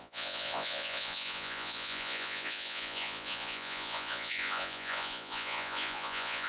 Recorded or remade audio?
remade